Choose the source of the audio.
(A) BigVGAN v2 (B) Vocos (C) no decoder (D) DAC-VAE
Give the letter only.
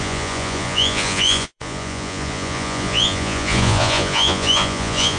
B